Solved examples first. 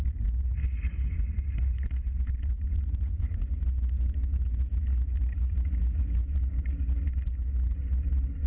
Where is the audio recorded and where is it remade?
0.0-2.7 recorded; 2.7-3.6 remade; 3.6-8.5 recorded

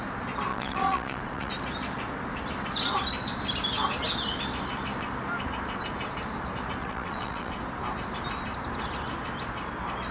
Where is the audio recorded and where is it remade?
0.0-0.5 recorded; 0.5-1.5 remade; 1.5-6.8 recorded; 6.8-7.5 remade; 7.5-10.1 recorded

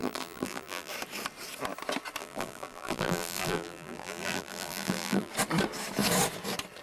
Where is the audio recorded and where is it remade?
0.0-0.9 remade; 0.9-2.2 recorded; 2.2-5.3 remade; 5.3-6.8 recorded

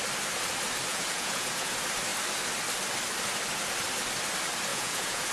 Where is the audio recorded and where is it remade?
0.0-0.9 recorded; 0.9-1.7 remade; 1.7-4.7 recorded; 4.7-5.3 remade

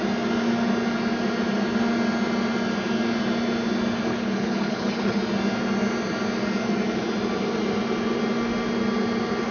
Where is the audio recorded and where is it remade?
0.0-4.1 recorded; 4.1-5.2 remade; 5.2-9.5 recorded